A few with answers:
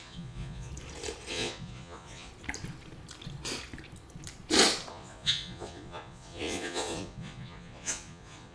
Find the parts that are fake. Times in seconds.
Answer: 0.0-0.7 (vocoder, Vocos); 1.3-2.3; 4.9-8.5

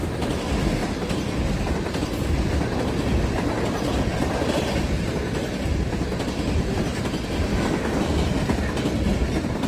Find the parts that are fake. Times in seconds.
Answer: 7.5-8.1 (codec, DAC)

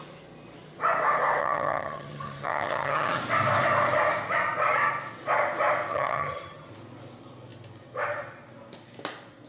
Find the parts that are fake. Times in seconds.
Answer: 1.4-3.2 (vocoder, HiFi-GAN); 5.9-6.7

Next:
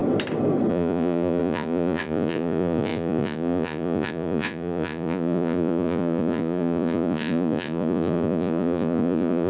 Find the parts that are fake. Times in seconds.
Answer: 0.7-9.5 (vocoder, Vocos)

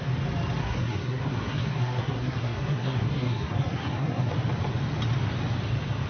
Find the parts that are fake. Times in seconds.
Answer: 0.6-4.3 (codec, SNAC)